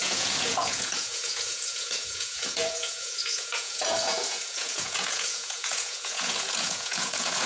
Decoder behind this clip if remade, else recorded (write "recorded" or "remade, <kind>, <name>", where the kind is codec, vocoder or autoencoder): remade, vocoder, Vocos